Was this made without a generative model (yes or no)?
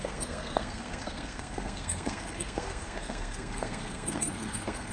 no